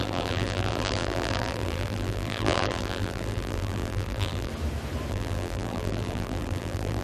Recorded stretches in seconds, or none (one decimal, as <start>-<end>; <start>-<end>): 4.5-5.1